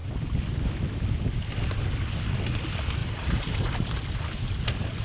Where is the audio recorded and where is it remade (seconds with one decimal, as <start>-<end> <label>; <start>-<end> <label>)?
0.0-3.0 recorded; 3.0-5.0 remade